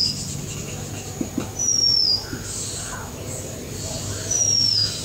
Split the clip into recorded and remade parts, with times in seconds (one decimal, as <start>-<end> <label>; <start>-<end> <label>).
0.0-3.6 recorded; 3.6-4.4 remade; 4.4-5.0 recorded